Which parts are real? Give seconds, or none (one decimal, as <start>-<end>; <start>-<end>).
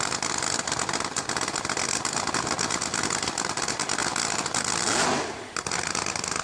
0.0-6.4